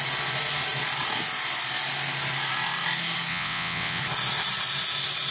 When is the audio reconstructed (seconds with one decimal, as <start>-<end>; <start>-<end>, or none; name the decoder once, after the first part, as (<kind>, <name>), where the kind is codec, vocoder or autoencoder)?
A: 3.3-4.0 (vocoder, WaveNeXt)